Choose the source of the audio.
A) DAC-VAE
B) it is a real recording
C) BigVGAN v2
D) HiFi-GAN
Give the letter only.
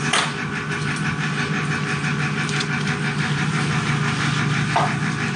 B